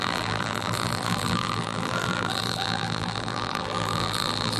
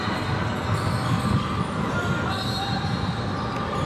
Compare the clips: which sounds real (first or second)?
second